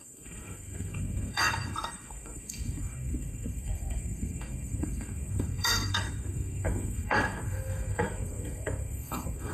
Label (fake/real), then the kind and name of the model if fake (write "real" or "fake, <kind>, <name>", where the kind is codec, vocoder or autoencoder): fake, codec, SNAC